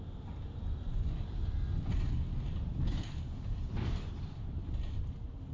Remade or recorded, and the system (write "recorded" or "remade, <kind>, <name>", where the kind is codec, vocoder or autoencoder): recorded